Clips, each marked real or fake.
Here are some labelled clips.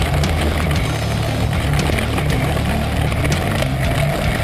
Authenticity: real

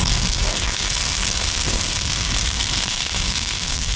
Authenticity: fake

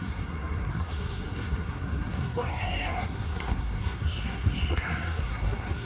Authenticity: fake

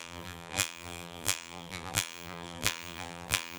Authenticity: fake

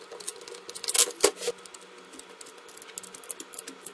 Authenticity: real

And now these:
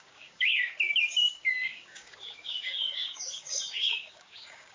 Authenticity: fake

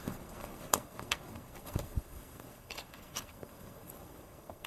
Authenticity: fake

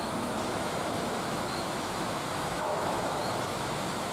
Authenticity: fake